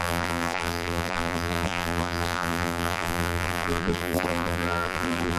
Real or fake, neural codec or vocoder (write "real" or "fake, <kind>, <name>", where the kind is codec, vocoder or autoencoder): fake, vocoder, BigVGAN v2